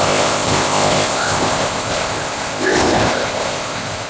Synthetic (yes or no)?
yes